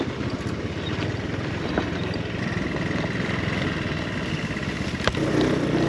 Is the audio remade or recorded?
remade